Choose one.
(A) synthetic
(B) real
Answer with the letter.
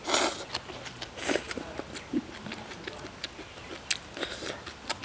B